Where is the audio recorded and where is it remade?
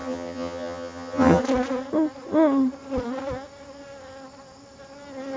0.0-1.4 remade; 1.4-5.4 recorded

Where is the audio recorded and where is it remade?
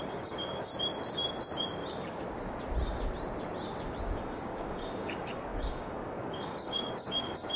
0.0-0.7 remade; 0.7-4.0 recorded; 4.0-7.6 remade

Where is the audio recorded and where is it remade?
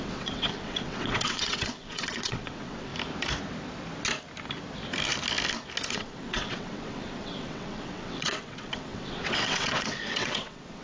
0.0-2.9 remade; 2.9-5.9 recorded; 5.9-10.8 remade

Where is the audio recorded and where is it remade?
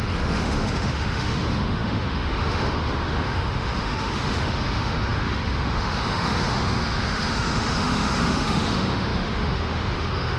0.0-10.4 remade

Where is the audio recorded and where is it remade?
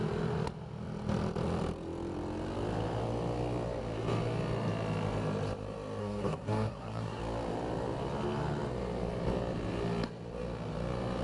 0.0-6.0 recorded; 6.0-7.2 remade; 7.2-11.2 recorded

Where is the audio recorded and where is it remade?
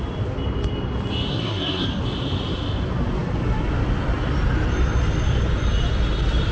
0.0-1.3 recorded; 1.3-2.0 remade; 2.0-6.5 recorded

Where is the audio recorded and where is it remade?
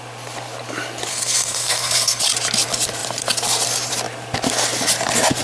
0.0-1.1 recorded; 1.1-2.2 remade; 2.2-5.4 recorded